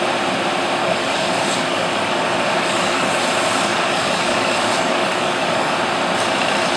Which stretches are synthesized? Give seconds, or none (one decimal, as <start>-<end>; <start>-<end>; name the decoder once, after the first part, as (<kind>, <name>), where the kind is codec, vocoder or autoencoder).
0.8-3.1 (codec, DAC); 3.7-5.8